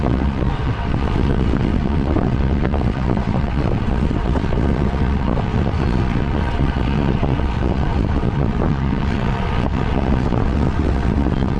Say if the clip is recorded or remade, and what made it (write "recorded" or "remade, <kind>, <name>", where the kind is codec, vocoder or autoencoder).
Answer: remade, vocoder, WaveNeXt